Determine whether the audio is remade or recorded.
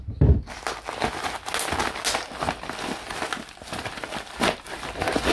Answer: recorded